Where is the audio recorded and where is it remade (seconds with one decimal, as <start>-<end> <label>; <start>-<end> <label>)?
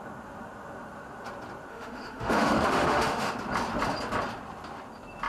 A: 0.0-1.7 recorded; 1.7-3.3 remade; 3.3-5.3 recorded